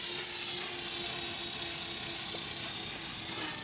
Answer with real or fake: real